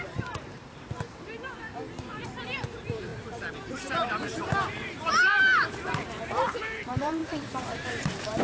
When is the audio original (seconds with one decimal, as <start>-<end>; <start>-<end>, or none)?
none